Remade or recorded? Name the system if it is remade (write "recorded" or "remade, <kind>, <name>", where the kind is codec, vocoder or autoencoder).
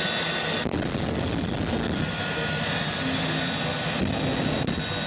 recorded